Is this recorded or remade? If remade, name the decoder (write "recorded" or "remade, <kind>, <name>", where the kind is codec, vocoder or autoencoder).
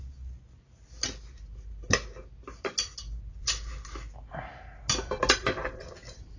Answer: recorded